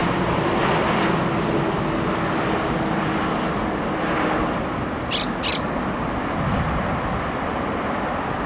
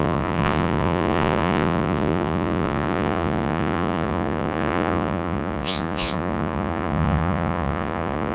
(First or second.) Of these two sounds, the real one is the first